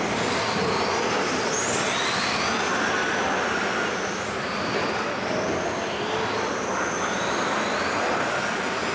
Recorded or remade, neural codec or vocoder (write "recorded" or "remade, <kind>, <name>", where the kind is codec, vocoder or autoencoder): recorded